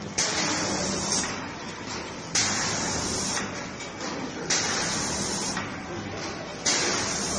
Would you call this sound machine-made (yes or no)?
no